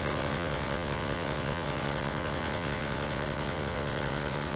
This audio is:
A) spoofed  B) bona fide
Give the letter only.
A